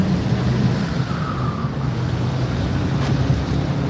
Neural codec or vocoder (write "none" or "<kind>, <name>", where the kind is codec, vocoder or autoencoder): none